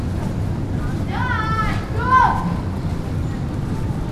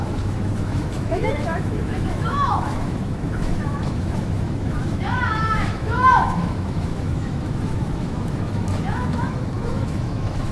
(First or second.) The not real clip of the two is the second